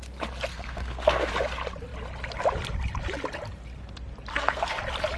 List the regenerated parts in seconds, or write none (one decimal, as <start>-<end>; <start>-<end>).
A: 0.5-1.3; 4.3-4.8